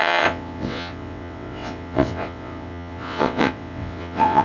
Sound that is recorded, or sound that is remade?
remade